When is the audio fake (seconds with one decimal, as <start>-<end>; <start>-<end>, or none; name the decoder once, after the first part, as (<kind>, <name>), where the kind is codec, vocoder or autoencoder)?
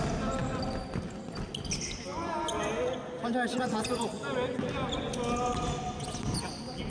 none